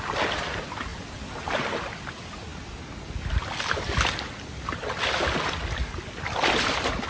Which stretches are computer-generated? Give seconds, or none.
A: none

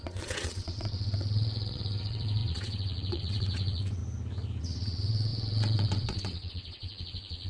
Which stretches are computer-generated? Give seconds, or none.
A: 0.0-4.0; 4.6-7.5

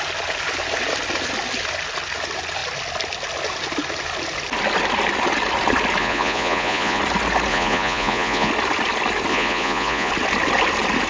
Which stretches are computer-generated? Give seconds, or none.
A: 6.0-7.0; 7.5-8.5; 9.3-10.1